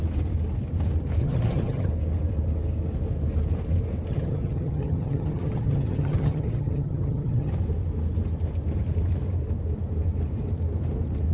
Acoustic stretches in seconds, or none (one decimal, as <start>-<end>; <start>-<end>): 0.0-1.2; 1.9-4.1; 7.5-11.3